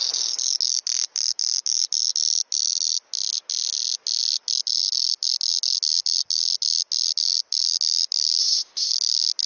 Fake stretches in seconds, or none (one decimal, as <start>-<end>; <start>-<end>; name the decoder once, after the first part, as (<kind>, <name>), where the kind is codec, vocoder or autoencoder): 8.4-8.9 (codec, ZipCodec)